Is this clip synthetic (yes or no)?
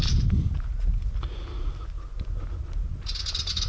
no